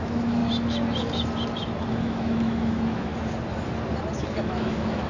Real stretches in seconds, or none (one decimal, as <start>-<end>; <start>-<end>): 0.4-1.9; 3.1-4.2